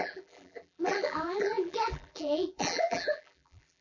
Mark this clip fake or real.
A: fake